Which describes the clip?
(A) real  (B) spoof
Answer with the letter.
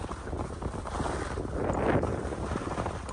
A